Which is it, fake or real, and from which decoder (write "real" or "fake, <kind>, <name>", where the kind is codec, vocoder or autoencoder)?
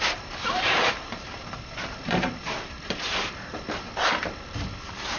fake, vocoder, BigVGAN v2